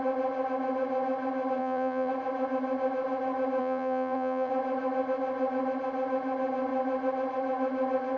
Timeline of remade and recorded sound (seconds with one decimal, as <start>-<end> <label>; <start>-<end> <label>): 0.0-1.6 recorded; 1.6-2.1 remade; 2.1-3.6 recorded; 3.6-4.5 remade; 4.5-8.2 recorded